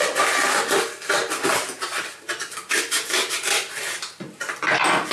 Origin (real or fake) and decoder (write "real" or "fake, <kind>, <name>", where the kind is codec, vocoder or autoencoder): real